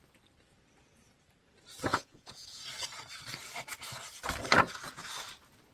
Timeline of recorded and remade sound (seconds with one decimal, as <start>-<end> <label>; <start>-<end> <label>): 0.0-1.9 recorded; 1.9-2.6 remade; 2.6-5.7 recorded